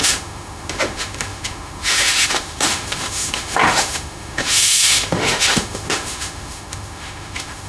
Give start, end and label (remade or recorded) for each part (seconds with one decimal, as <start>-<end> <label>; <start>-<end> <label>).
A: 0.0-7.7 remade